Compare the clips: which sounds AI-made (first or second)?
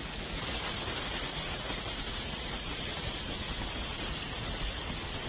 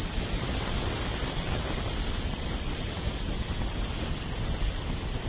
first